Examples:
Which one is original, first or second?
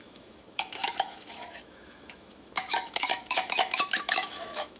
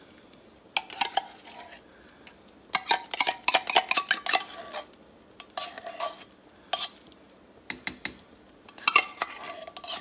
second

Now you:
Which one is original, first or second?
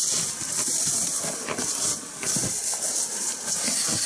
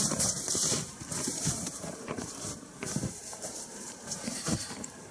first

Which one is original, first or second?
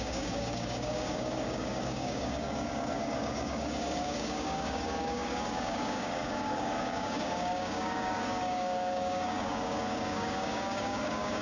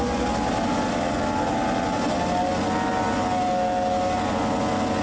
second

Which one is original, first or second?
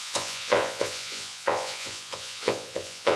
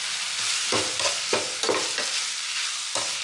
second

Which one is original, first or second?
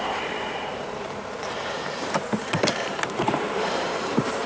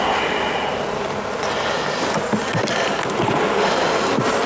second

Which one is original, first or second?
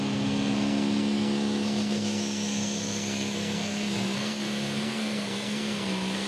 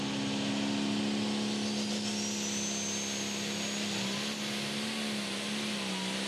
second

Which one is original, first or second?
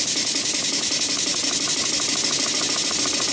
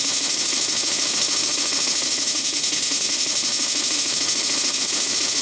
first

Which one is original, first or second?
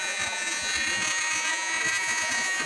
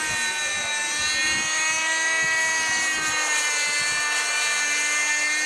second